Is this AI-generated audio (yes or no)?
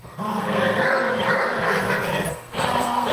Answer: yes